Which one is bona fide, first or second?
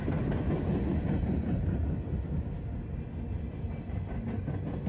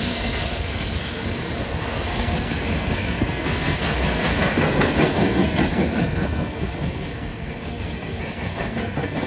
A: first